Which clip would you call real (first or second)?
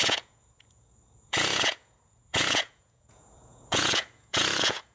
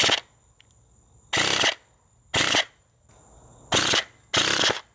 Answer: second